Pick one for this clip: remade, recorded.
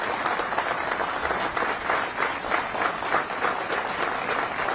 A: recorded